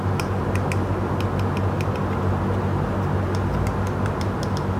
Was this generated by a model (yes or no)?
no